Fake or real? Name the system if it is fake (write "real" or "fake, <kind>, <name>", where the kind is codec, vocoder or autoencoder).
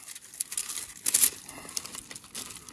real